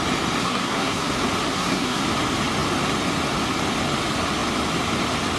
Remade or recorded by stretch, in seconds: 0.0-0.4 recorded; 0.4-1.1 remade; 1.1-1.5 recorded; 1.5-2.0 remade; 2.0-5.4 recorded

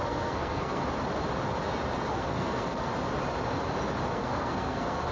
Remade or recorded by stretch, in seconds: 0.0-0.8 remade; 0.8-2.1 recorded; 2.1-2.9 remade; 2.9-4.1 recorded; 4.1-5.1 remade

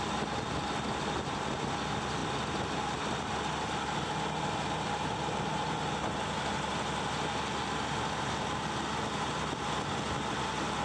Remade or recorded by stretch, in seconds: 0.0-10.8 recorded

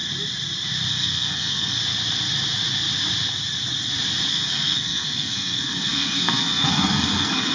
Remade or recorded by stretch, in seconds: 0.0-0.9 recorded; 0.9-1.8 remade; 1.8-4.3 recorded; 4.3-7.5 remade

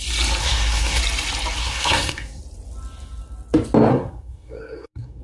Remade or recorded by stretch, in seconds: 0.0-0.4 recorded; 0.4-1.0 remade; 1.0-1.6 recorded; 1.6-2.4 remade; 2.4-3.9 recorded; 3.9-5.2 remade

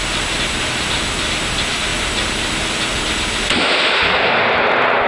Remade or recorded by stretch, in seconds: 0.0-5.1 recorded

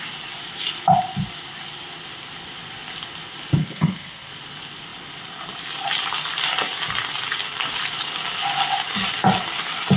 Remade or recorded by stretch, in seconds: 0.0-3.6 recorded; 3.6-4.3 remade; 4.3-10.0 recorded

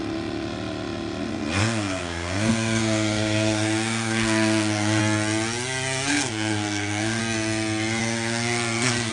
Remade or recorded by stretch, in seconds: 0.0-1.6 recorded; 1.6-5.0 remade; 5.0-6.1 recorded; 6.1-7.2 remade; 7.2-8.0 recorded; 8.0-9.1 remade